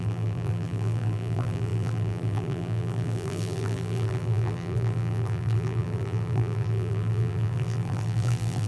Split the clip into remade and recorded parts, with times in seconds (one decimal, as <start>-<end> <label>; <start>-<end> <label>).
0.0-8.7 remade